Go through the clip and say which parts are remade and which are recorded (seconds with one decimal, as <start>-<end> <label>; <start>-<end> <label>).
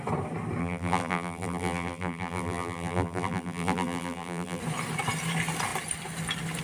0.0-0.6 recorded; 0.6-4.6 remade; 4.6-6.6 recorded